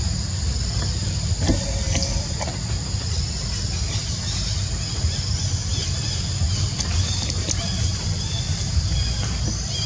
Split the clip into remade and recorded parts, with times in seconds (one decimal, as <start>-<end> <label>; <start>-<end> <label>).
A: 0.0-9.9 recorded